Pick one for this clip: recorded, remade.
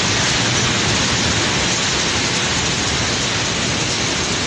recorded